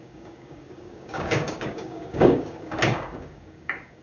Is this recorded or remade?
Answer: remade